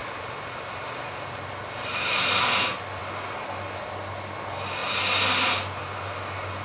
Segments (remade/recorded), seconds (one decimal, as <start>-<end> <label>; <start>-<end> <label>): 0.0-6.6 recorded